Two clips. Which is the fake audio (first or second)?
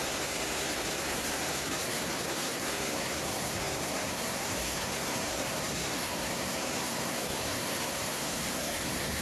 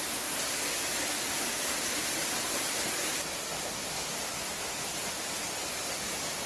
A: first